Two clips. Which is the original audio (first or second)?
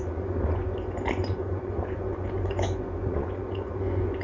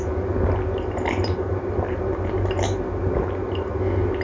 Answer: second